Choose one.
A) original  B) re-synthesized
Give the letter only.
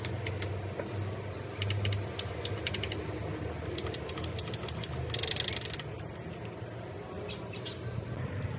A